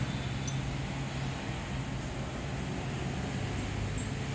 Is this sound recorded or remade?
recorded